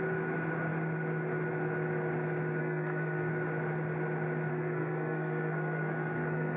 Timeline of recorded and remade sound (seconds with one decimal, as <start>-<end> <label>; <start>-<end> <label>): 0.0-2.6 recorded; 2.6-3.3 remade; 3.3-4.5 recorded; 4.5-6.6 remade